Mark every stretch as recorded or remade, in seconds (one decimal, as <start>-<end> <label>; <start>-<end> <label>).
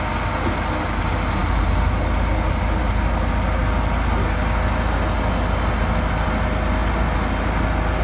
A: 0.0-8.0 recorded